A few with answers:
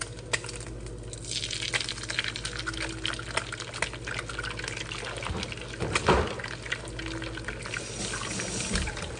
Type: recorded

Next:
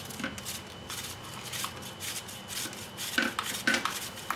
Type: recorded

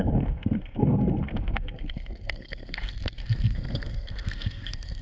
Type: remade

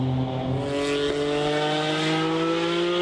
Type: recorded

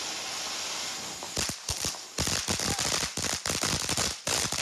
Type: recorded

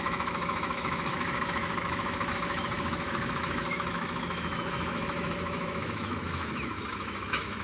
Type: remade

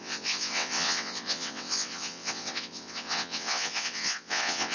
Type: remade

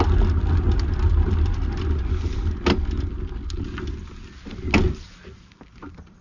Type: recorded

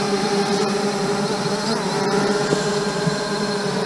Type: remade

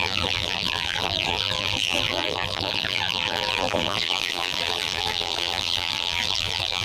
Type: remade